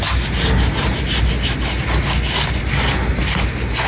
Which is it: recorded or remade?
recorded